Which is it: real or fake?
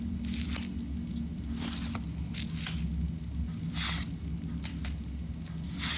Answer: real